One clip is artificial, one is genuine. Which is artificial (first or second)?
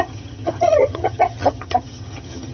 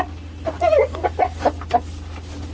first